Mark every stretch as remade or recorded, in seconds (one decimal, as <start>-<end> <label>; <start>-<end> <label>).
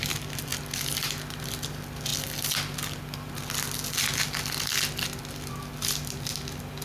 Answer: 0.0-6.8 recorded